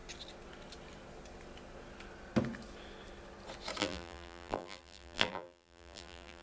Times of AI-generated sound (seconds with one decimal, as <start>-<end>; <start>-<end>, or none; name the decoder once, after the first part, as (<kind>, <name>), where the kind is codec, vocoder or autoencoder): 3.8-6.4 (vocoder, BigVGAN v2)